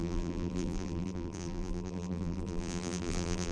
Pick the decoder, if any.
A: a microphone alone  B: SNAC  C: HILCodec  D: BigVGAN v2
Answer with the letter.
D